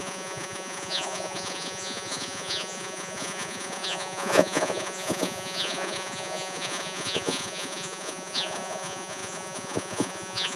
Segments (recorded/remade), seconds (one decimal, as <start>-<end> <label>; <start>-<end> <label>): 0.0-10.6 remade